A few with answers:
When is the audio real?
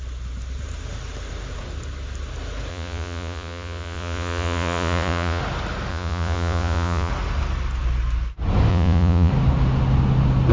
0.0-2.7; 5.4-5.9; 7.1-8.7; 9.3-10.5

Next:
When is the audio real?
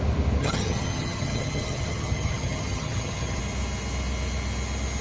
0.0-0.4; 3.4-5.0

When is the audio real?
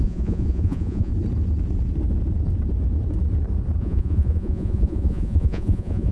1.1-3.8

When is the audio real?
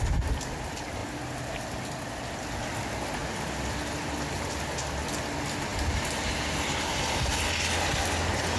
0.0-8.6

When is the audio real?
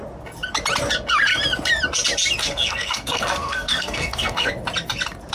0.0-2.4; 4.5-5.3